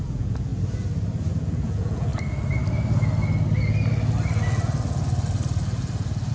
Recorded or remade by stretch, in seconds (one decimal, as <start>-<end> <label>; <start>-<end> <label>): 0.0-0.5 remade; 0.5-1.3 recorded; 1.3-2.1 remade; 2.1-6.3 recorded